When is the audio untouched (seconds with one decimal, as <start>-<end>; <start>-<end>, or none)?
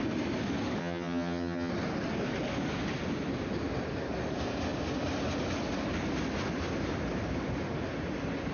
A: 0.0-0.8; 1.7-8.5